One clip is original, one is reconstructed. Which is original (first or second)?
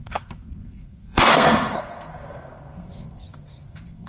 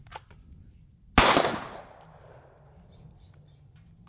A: second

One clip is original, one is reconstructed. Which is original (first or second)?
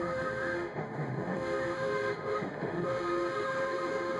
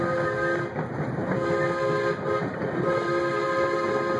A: second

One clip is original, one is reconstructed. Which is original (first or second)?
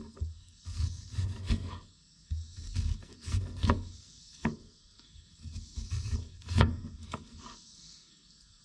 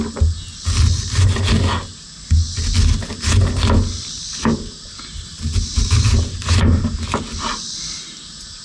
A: second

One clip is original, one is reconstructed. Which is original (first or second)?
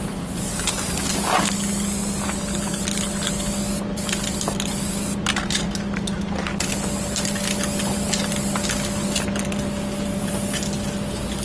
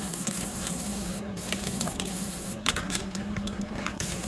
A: first